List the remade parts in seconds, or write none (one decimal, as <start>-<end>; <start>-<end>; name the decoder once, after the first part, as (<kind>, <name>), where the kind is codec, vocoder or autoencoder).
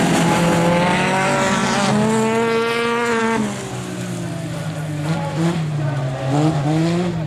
none